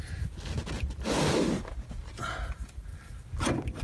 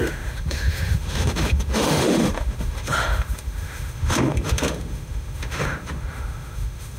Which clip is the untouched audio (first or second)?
first